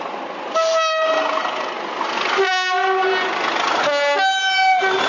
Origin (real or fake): real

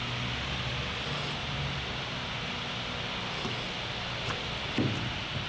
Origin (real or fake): real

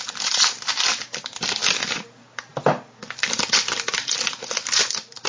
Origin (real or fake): real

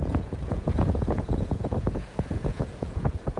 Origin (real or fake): fake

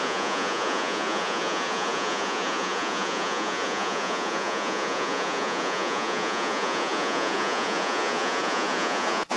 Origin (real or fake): fake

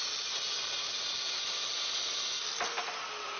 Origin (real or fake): real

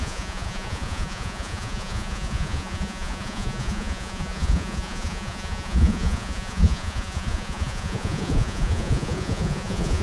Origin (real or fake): fake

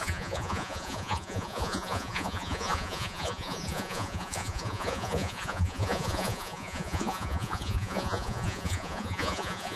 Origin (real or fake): fake